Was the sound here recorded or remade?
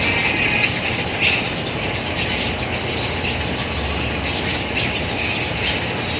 recorded